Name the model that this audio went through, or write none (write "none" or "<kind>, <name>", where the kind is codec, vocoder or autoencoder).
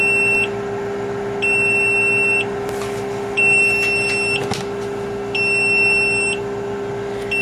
none